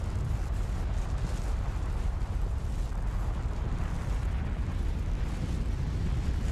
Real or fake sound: real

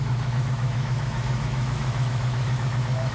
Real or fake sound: fake